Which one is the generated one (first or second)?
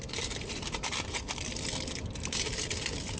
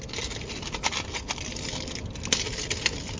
first